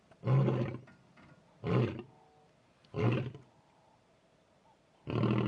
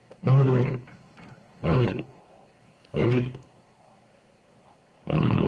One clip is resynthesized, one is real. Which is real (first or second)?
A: first